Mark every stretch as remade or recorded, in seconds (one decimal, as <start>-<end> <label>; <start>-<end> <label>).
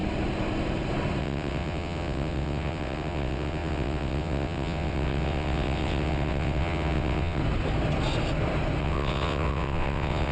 0.0-1.2 recorded; 1.2-7.4 remade; 7.4-8.8 recorded; 8.8-10.3 remade